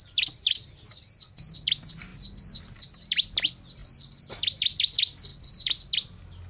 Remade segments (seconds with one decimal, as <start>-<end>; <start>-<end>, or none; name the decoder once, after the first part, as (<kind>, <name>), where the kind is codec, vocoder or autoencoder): 2.1-2.6 (vocoder, BigVGAN v2); 3.8-4.3; 5.3-6.5